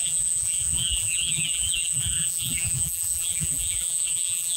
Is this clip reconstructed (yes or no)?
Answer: yes